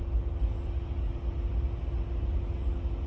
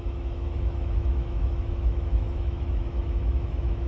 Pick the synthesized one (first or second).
second